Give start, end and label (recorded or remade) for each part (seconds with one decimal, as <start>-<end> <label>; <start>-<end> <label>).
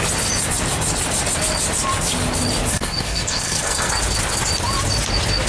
0.0-2.7 recorded; 2.7-3.9 remade; 3.9-5.5 recorded